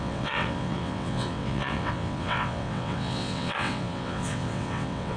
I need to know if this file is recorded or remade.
remade